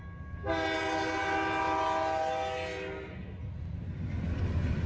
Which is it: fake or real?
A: real